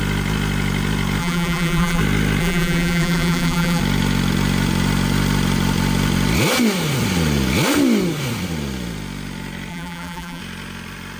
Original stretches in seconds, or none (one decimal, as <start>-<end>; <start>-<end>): 0.0-1.2; 2.0-2.4; 3.8-9.7; 10.4-11.2